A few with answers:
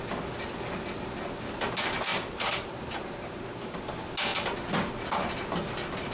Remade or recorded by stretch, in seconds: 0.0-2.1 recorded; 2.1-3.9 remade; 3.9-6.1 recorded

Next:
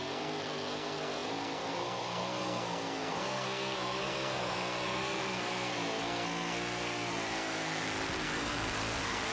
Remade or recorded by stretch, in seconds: 0.0-9.3 remade